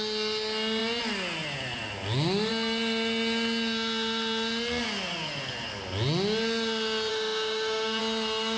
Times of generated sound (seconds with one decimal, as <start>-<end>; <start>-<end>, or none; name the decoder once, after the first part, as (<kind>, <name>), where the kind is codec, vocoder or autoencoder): 7.1-8.0 (autoencoder, DAC-VAE)